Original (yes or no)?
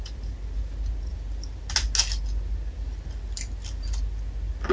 yes